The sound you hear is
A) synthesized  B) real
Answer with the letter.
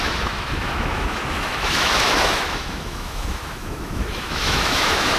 A